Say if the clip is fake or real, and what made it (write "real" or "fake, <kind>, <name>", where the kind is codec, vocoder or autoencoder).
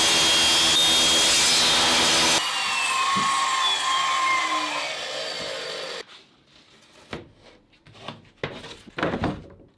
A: real